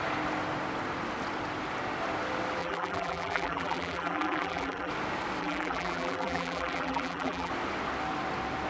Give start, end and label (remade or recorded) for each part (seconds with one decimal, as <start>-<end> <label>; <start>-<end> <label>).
0.0-2.6 recorded; 2.6-4.9 remade; 4.9-5.4 recorded; 5.4-7.5 remade; 7.5-8.7 recorded